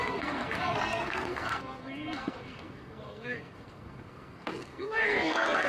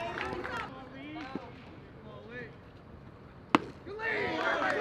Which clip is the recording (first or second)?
second